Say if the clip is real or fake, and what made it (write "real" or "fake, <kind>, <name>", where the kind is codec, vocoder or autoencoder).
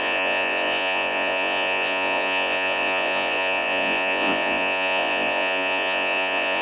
fake, vocoder, Vocos